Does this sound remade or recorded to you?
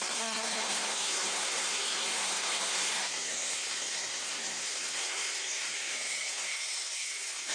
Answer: remade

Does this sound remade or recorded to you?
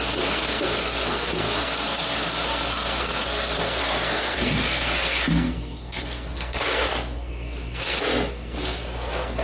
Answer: remade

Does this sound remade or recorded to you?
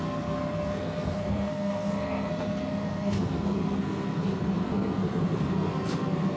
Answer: remade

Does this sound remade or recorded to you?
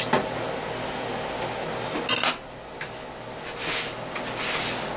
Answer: recorded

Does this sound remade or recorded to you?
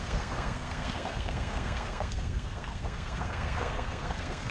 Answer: remade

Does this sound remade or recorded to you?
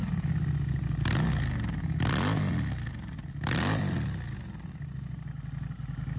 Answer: recorded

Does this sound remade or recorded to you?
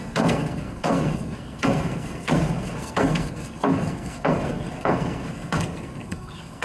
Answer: remade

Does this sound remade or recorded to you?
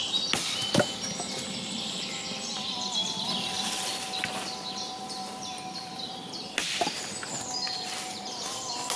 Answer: recorded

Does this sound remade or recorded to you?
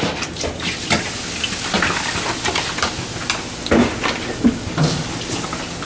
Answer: recorded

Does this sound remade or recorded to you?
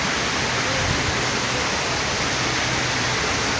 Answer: recorded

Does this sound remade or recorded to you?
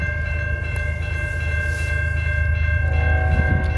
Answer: recorded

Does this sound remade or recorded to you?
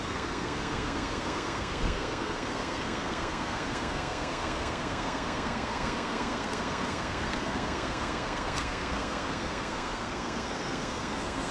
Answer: remade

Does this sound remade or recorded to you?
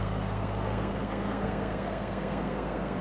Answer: remade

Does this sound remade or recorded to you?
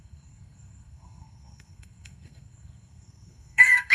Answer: remade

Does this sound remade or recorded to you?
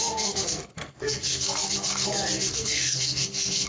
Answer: remade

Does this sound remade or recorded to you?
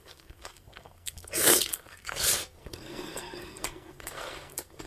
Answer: remade